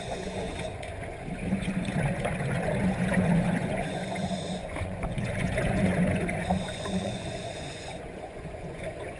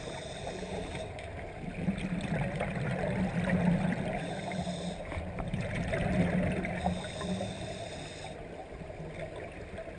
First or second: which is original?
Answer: second